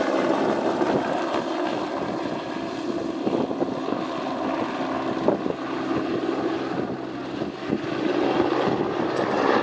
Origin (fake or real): real